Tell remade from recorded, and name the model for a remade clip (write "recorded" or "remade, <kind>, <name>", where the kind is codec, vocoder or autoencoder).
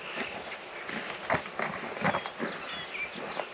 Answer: recorded